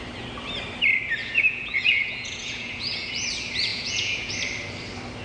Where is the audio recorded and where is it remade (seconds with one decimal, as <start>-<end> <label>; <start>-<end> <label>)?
0.0-1.2 recorded; 1.2-3.1 remade; 3.1-3.7 recorded; 3.7-4.3 remade; 4.3-5.2 recorded